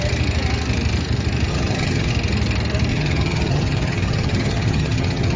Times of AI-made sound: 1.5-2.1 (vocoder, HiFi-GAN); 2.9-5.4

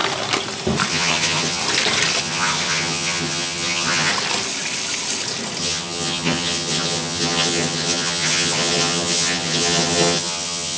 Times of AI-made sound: 0.9-1.6 (vocoder, HiFi-GAN); 2.2-4.1; 5.6-10.8

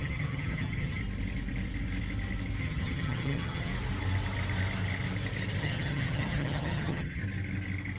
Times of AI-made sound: 0.0-1.0 (vocoder, HiFi-GAN); 2.6-3.7; 5.6-7.2

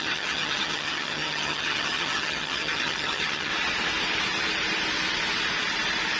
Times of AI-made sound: 0.0-3.5 (vocoder, HiFi-GAN)

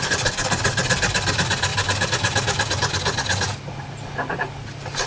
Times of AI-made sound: none

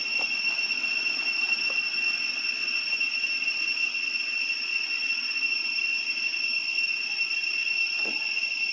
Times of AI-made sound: none

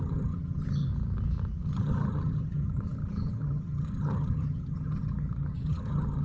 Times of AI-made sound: 0.0-0.9 (vocoder, HiFi-GAN); 1.7-6.2